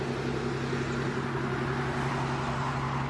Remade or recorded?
recorded